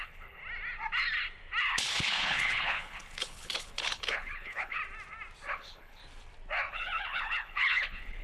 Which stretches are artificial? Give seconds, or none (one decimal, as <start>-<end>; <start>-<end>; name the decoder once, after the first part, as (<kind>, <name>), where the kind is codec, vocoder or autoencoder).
0.0-0.4 (codec, HILCodec); 1.7-4.8; 5.5-6.0; 6.7-8.2